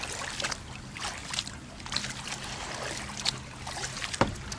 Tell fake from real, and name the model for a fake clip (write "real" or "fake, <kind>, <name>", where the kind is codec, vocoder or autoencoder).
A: real